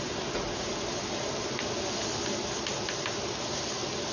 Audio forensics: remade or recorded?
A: recorded